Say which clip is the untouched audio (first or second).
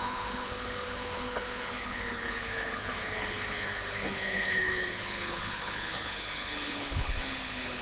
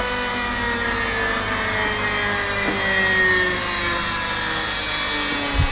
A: second